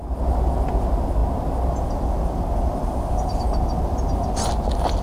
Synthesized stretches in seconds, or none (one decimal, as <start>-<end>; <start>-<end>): none